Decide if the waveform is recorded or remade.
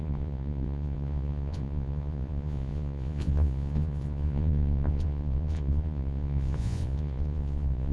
remade